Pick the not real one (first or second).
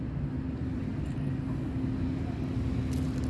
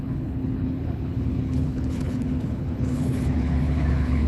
second